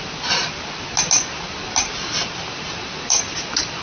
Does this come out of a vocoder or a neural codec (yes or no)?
no